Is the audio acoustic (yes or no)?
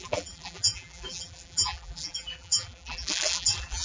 no